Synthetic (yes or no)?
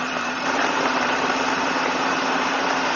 yes